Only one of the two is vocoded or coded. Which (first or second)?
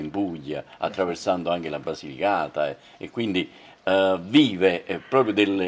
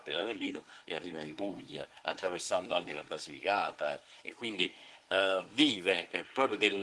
second